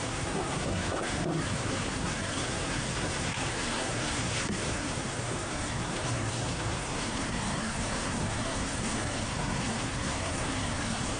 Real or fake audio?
fake